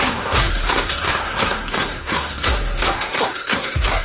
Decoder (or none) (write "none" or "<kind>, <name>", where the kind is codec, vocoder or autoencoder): codec, SNAC